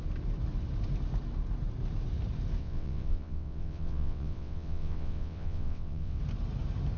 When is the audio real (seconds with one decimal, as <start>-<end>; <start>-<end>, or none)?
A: 0.0-2.6; 6.2-7.0